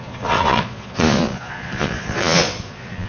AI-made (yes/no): yes